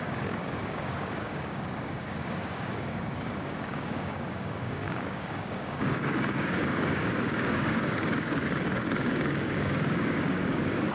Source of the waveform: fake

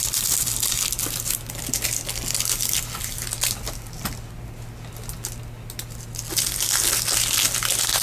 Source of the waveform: real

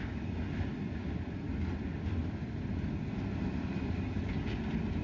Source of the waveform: real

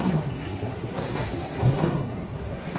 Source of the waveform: fake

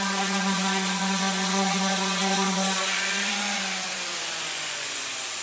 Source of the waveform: fake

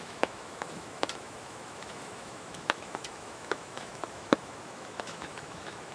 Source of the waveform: fake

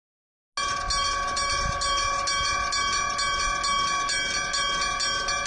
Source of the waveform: real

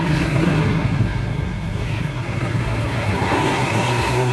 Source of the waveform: fake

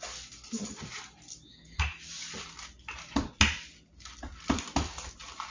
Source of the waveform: real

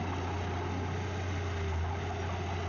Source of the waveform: real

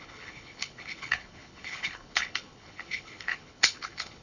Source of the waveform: fake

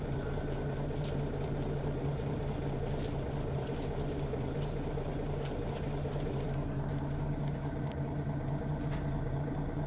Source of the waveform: fake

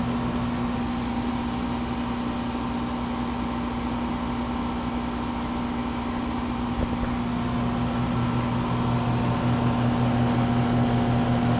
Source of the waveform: real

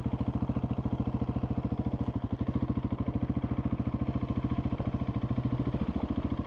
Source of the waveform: real